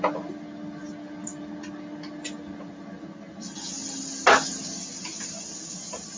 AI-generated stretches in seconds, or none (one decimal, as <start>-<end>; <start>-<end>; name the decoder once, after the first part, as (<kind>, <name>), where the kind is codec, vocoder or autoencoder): none